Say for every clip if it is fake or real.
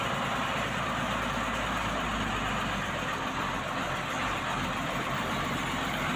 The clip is real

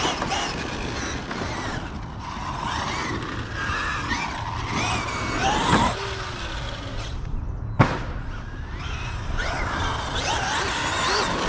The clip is real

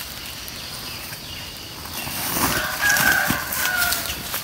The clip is real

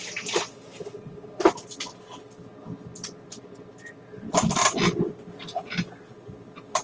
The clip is real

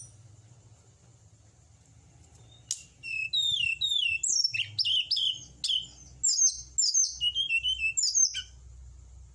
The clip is real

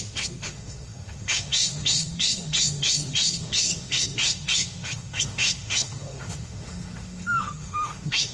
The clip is fake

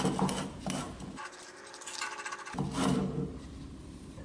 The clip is real